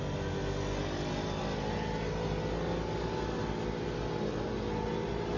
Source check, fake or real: real